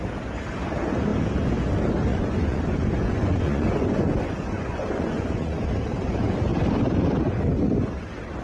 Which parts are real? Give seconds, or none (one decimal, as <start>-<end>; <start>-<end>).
0.0-2.1; 5.7-8.4